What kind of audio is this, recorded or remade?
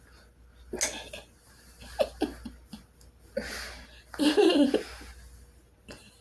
recorded